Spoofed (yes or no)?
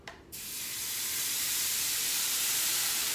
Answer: yes